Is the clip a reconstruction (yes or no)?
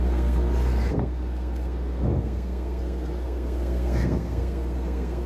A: yes